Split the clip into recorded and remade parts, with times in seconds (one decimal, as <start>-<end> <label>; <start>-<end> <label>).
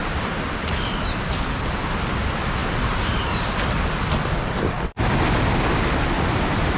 0.0-6.8 recorded